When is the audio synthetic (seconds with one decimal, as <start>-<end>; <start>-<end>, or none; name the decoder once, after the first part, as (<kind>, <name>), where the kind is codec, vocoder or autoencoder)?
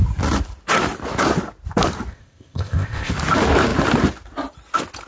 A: 2.1-3.1 (codec, ZipCodec)